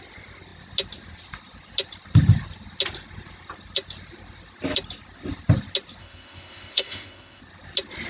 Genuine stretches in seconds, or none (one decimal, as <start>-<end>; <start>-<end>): 0.0-6.0; 7.4-8.1